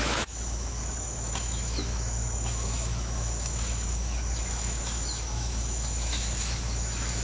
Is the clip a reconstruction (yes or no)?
yes